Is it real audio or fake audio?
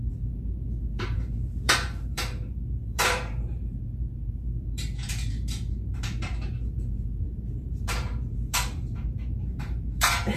fake